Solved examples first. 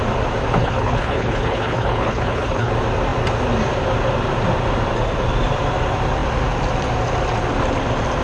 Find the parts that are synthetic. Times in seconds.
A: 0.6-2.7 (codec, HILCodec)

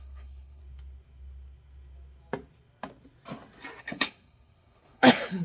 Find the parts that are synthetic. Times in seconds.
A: 0.0-0.6 (codec, HILCodec); 3.8-5.4

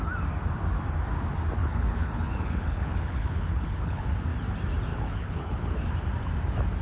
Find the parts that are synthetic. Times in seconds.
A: 1.6-4.1 (codec, HILCodec); 4.9-5.9